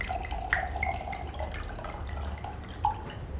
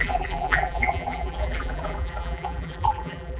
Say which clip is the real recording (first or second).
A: first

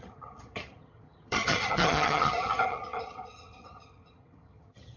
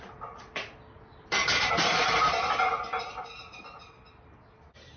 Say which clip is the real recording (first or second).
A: second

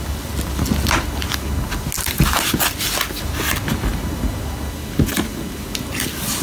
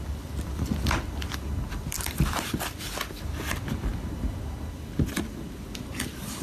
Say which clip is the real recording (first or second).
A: first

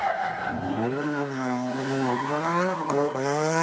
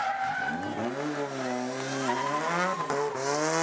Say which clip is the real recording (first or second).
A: second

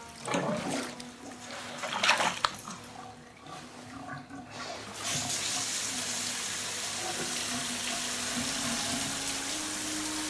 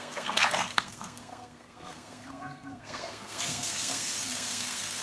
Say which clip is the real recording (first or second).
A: first